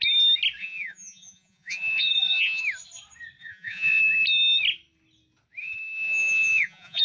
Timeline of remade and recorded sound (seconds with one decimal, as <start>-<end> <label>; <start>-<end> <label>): 0.0-0.6 recorded; 0.6-2.6 remade; 2.6-3.4 recorded; 3.4-4.0 remade; 4.0-5.6 recorded; 5.6-7.0 remade